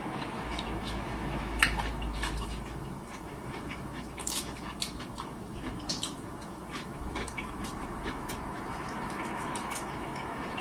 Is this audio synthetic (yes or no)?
yes